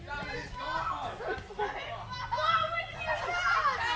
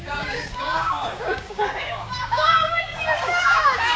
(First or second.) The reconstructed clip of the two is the second